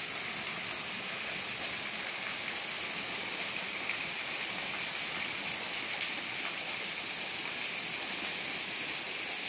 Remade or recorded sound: recorded